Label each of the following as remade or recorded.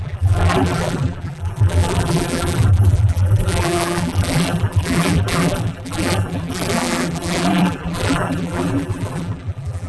remade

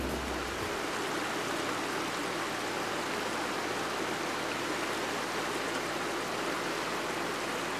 recorded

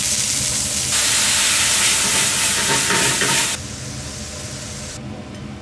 recorded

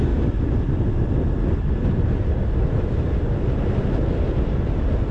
recorded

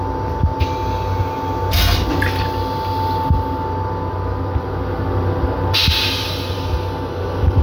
recorded